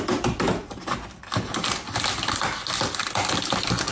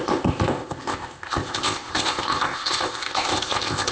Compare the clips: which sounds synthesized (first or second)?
second